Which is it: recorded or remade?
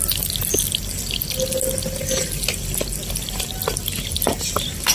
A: recorded